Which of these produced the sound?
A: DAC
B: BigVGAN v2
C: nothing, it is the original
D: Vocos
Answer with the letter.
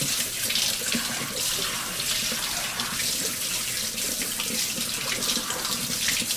C